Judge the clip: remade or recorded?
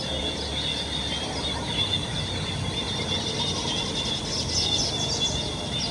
recorded